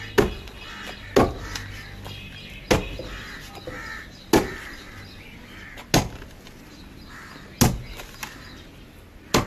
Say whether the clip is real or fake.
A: real